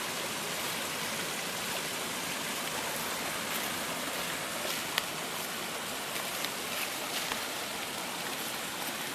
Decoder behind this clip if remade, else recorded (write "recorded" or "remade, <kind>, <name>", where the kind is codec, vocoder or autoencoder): recorded